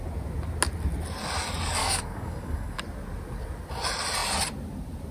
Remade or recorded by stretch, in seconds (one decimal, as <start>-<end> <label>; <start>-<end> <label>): 0.0-1.8 recorded; 1.8-2.8 remade; 2.8-5.1 recorded